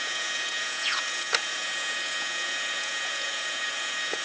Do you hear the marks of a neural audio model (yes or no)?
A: yes